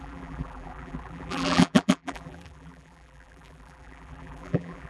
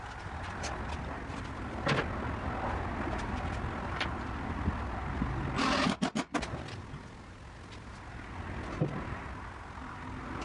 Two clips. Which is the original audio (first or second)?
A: second